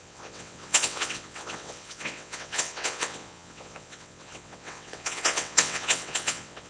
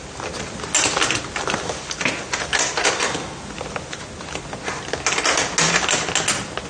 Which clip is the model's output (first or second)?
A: first